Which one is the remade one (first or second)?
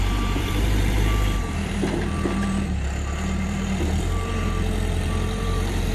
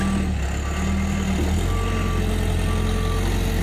first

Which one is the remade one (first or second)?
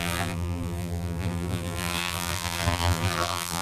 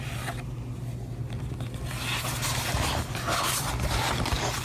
first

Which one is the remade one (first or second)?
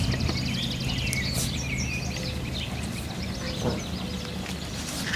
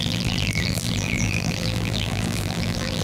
second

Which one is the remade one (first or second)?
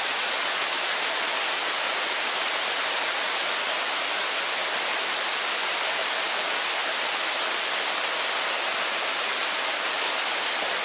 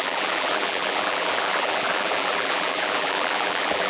second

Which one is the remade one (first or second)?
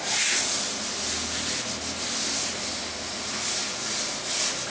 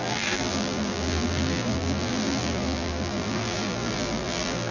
second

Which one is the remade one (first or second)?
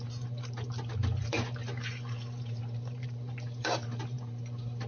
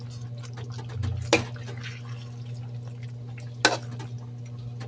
first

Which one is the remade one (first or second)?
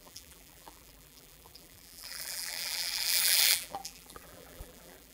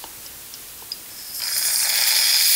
first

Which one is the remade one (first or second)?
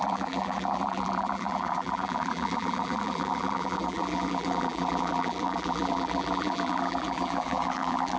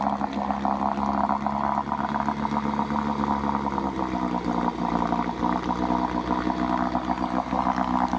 first